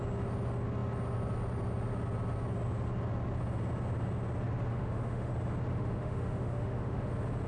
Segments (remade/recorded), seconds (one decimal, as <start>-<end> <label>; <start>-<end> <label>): 0.0-4.7 recorded; 4.7-5.3 remade; 5.3-5.7 recorded; 5.7-7.1 remade; 7.1-7.5 recorded